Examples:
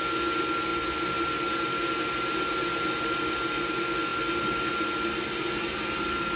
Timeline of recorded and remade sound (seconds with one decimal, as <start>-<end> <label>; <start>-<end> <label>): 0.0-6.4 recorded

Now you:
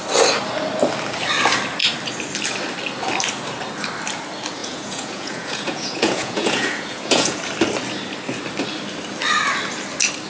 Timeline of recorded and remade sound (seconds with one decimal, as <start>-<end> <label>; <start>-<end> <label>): 0.0-4.6 recorded; 4.6-7.4 remade; 7.4-10.3 recorded

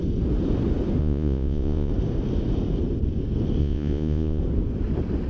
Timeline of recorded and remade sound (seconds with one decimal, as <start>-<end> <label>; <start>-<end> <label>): 0.0-1.0 recorded; 1.0-1.9 remade; 1.9-3.6 recorded; 3.6-4.4 remade; 4.4-5.3 recorded